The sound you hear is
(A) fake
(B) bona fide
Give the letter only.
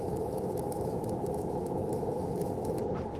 A